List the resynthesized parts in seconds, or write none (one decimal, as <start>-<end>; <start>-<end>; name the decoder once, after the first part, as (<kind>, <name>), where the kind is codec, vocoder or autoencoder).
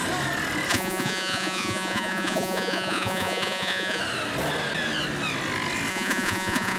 0.7-4.0 (vocoder, Vocos); 5.9-6.8